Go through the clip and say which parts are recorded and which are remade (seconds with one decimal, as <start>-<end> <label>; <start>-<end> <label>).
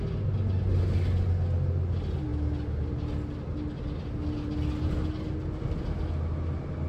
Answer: 0.0-6.9 recorded